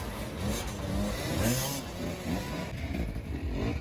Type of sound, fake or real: real